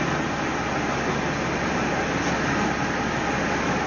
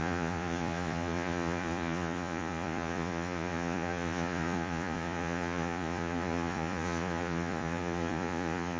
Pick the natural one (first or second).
first